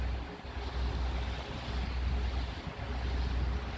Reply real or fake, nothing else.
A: real